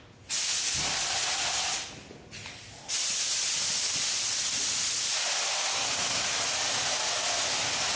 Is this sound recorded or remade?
recorded